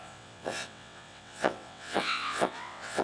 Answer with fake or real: fake